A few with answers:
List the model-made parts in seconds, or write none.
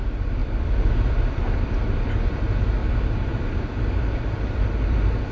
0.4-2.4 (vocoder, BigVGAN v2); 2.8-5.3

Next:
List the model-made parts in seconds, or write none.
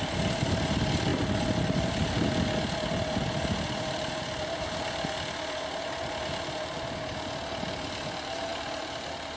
none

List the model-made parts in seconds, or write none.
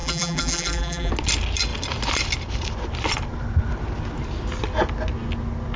0.0-1.1 (vocoder, BigVGAN v2)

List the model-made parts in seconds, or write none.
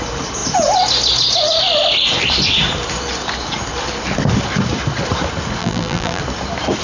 5.6-6.2 (vocoder, BigVGAN v2)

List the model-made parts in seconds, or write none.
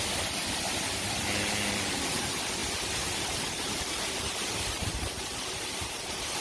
2.6-6.4 (vocoder, BigVGAN v2)